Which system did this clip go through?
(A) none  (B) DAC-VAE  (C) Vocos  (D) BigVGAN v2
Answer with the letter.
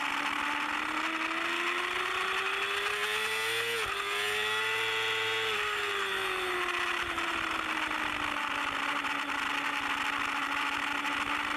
A